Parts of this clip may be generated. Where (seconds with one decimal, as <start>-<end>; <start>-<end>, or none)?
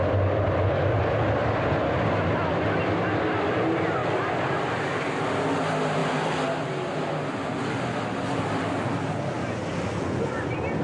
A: none